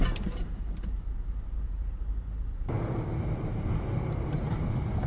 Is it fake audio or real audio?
fake